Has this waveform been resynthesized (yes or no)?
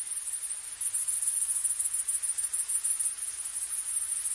no